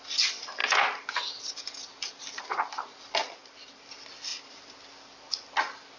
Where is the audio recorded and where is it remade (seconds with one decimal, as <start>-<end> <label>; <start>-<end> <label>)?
0.0-0.6 remade; 0.6-2.4 recorded; 2.4-6.0 remade